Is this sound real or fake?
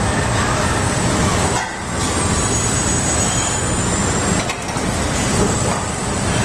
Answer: real